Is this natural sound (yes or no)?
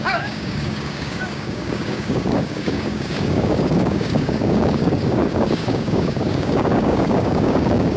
no